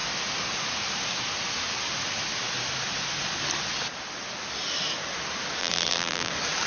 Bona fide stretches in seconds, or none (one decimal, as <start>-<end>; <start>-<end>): 0.0-5.6; 6.3-6.7